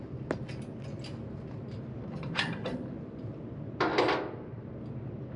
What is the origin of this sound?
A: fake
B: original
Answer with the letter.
B